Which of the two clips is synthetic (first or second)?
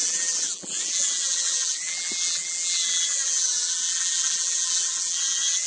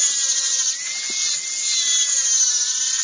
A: first